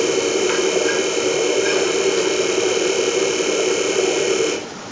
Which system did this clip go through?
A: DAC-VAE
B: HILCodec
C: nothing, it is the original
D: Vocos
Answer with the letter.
C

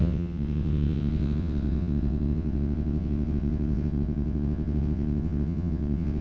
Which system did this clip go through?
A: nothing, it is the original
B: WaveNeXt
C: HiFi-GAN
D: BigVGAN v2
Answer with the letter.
B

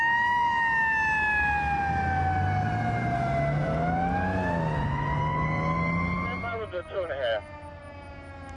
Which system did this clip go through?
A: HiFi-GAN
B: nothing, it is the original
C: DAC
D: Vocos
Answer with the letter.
B